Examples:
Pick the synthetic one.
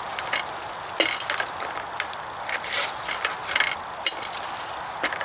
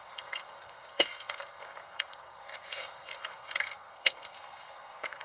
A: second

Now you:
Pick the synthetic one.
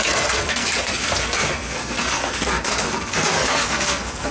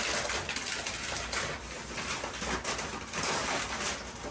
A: first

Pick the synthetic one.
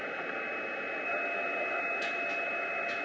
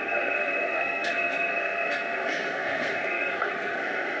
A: second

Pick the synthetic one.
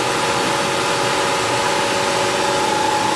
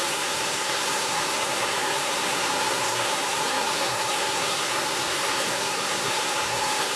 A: second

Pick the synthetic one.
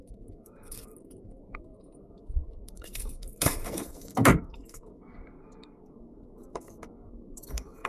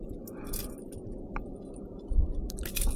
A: first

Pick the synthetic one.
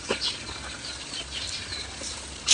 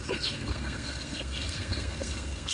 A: second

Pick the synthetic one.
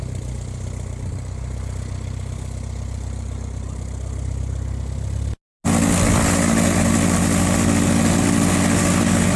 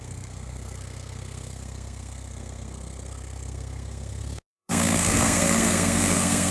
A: second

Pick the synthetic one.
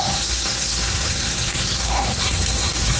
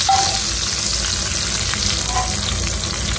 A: first